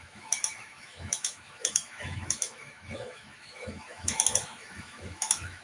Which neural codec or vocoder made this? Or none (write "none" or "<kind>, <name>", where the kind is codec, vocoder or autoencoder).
autoencoder, DAC-VAE